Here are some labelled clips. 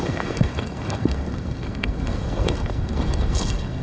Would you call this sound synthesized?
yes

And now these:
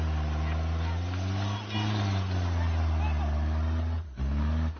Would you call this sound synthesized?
no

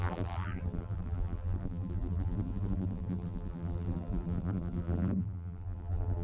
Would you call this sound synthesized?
yes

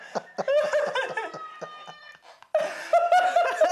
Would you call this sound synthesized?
no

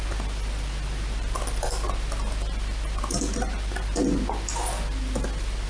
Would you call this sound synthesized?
no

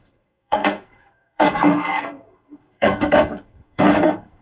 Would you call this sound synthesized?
yes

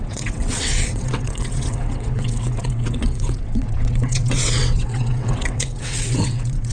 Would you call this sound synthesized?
yes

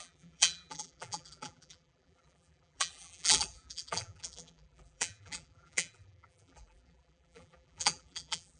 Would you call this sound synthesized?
yes